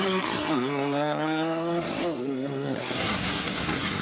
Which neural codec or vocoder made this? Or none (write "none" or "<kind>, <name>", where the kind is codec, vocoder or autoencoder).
codec, SNAC